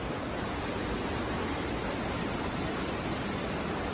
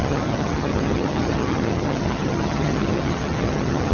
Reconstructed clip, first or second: second